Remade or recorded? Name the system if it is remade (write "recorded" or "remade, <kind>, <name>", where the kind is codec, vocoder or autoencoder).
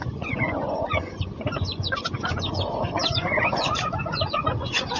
remade, vocoder, Vocos